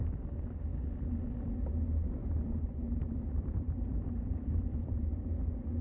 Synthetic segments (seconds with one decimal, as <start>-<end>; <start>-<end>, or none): 2.2-5.2